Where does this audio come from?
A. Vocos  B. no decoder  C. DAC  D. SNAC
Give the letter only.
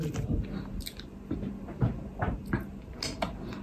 B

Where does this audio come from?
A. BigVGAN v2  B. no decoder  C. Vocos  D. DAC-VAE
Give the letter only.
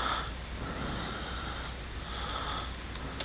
B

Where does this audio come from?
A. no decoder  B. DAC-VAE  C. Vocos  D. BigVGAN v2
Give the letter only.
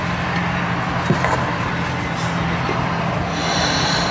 A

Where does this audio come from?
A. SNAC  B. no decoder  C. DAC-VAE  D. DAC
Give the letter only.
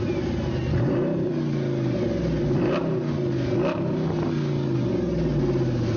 B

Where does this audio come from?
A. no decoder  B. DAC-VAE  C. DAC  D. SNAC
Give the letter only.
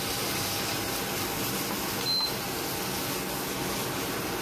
A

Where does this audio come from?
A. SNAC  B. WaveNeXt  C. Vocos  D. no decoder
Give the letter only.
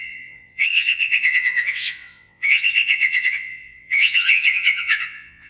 B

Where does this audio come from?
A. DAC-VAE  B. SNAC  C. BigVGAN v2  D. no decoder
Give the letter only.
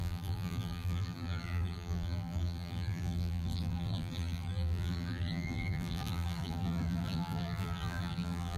C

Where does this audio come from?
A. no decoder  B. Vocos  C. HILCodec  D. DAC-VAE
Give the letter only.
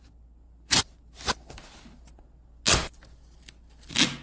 A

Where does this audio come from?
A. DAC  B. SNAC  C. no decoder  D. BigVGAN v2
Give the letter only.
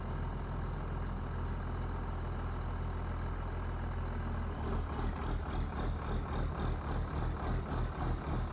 C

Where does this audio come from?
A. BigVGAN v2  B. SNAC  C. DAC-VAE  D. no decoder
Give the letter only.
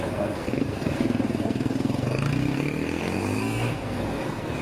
B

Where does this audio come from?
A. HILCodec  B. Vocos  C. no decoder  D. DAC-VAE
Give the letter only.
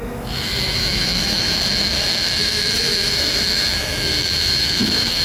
D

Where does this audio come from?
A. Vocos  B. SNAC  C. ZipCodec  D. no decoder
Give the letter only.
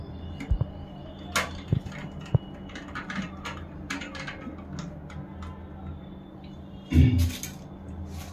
D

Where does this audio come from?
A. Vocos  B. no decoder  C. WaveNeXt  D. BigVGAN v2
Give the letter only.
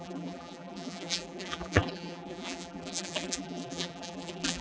D